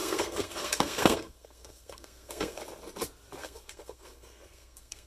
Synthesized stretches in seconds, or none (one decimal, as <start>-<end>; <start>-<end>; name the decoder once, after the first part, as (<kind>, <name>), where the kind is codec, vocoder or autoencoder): 0.0-2.6 (codec, SNAC); 3.4-5.1